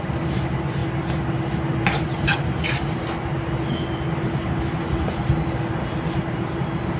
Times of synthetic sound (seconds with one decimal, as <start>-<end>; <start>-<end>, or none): none